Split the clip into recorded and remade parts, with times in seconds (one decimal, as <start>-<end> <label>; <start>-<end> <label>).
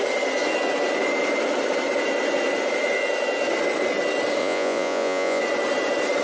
0.0-4.4 recorded; 4.4-5.4 remade; 5.4-6.2 recorded